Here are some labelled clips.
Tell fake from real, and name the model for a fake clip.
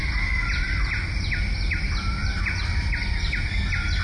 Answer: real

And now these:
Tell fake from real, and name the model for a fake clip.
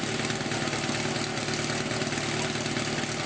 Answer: real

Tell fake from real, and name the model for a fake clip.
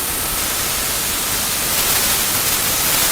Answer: real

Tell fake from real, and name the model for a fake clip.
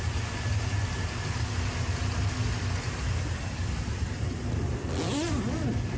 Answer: real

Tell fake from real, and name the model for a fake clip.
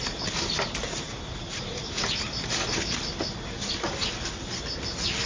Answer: real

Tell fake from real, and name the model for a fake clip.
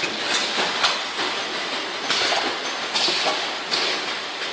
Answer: real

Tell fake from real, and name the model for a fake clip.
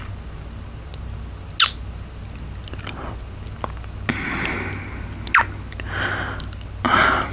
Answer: real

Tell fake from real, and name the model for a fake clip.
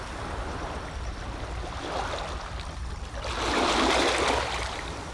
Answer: real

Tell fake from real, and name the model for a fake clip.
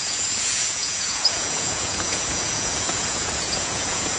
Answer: fake, vocoder, Vocos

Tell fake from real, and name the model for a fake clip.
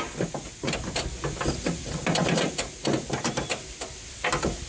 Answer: real